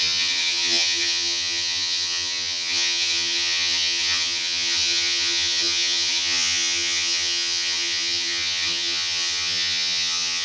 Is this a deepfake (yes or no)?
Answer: yes